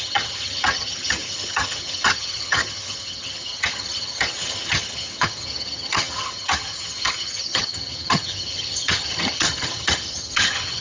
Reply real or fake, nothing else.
fake